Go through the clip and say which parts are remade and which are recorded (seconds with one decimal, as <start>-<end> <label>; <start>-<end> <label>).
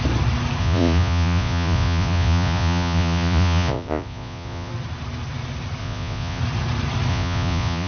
0.0-0.6 recorded; 0.6-4.7 remade; 4.7-5.8 recorded; 5.8-6.4 remade; 6.4-7.1 recorded; 7.1-7.9 remade